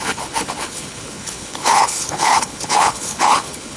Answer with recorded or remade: remade